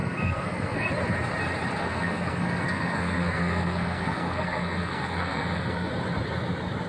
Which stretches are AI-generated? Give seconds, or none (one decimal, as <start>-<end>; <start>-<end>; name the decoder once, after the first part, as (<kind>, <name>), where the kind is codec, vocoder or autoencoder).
0.0-0.9 (codec, SNAC); 1.8-5.9